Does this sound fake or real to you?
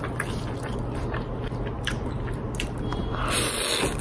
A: real